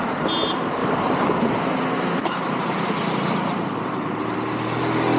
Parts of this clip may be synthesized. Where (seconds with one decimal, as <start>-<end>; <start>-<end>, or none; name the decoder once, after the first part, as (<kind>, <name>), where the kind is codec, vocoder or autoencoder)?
0.8-1.3 (vocoder, BigVGAN v2); 2.2-4.8